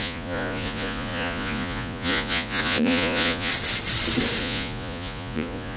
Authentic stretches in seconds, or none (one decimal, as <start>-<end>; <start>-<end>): 3.5-4.4